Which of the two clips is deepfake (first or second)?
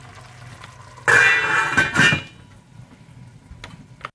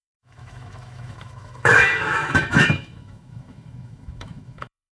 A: second